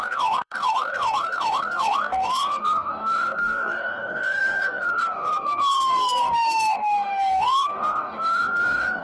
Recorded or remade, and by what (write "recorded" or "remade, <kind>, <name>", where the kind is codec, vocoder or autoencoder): remade, codec, DAC